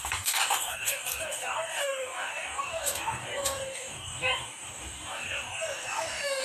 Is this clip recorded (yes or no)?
no